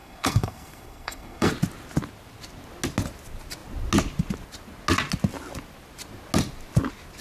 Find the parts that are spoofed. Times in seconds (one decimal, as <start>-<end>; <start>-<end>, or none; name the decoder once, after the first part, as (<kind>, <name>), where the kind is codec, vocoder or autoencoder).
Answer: 0.0-1.5 (codec, SNAC)